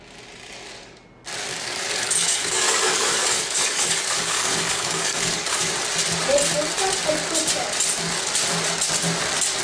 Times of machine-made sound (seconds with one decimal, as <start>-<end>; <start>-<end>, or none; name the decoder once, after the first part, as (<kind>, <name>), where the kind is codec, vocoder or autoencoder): 1.5-5.7 (codec, DAC)